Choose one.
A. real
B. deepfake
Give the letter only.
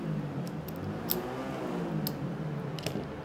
A